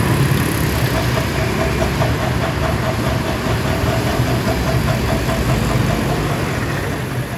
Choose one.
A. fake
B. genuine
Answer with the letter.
B